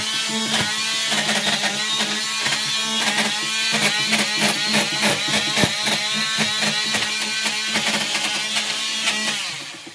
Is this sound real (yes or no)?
yes